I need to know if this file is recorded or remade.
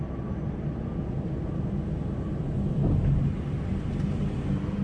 recorded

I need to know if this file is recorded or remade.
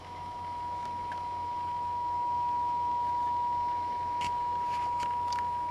remade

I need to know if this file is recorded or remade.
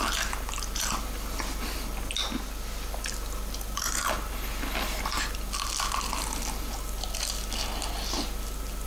recorded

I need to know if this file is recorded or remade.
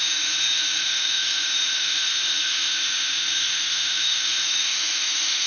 remade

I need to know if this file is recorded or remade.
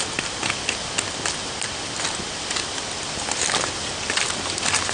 recorded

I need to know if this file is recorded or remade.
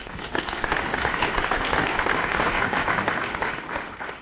remade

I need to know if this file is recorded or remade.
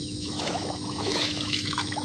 remade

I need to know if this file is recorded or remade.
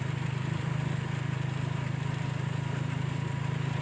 recorded